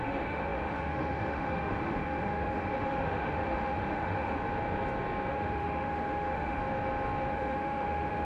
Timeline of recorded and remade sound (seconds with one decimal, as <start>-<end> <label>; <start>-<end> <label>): 0.0-4.4 remade; 4.4-5.3 recorded; 5.3-6.6 remade; 6.6-7.3 recorded; 7.3-8.2 remade